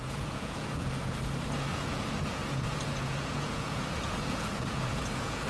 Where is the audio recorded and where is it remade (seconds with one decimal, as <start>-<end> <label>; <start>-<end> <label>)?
0.0-5.5 remade